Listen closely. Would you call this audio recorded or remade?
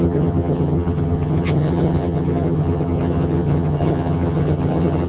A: remade